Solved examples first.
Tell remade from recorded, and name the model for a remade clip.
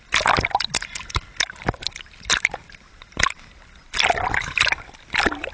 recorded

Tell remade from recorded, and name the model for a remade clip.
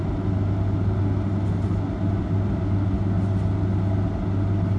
recorded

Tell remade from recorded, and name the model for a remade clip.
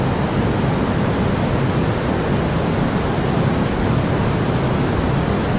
recorded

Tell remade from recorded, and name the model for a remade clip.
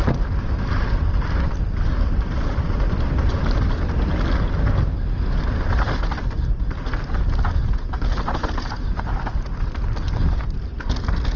recorded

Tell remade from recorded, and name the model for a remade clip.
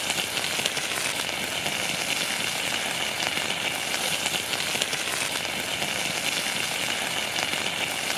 recorded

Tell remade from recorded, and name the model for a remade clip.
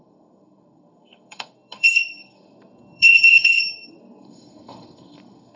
remade, codec, SNAC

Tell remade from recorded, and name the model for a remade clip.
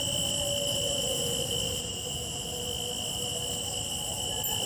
recorded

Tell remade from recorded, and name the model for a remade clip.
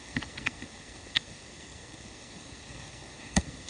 remade, codec, SNAC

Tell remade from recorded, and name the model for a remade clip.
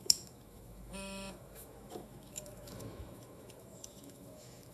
remade, autoencoder, DAC-VAE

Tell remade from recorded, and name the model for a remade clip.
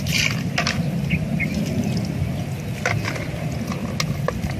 recorded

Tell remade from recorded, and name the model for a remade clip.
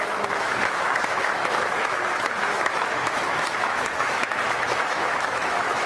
remade, autoencoder, DAC-VAE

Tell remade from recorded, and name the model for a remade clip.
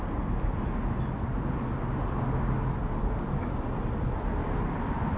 recorded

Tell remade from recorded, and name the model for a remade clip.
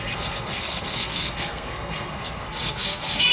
remade, codec, SNAC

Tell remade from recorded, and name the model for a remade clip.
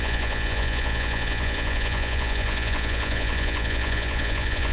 remade, vocoder, Vocos